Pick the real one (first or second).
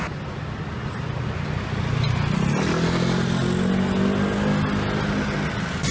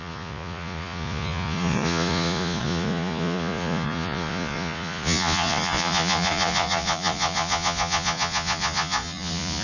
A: first